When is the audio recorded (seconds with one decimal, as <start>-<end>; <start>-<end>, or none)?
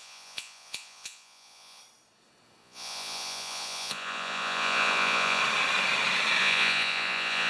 1.8-2.6; 5.4-6.4